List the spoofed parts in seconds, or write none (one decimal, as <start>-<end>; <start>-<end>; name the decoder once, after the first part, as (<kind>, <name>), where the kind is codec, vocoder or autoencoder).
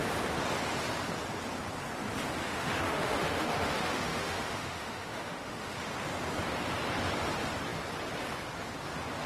2.4-5.9 (autoencoder, DAC-VAE)